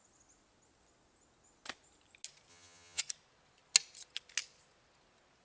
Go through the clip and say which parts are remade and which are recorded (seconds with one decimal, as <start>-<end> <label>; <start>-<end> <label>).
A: 0.0-2.5 recorded; 2.5-3.0 remade; 3.0-5.4 recorded